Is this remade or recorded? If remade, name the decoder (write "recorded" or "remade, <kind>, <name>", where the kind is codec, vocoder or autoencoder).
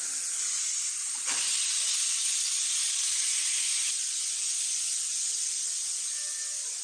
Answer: recorded